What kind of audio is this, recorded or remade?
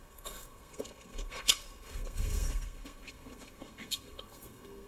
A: remade